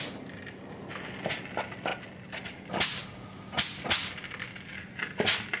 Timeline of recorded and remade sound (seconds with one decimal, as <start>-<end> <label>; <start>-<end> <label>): 0.0-5.6 recorded